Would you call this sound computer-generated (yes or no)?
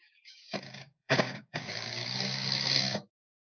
yes